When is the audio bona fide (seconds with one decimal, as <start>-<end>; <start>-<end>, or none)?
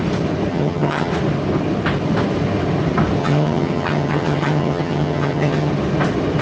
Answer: 0.0-0.5; 1.1-3.2; 5.7-6.4